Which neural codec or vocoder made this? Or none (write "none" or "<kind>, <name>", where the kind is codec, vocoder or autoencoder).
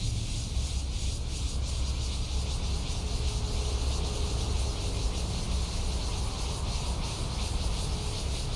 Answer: none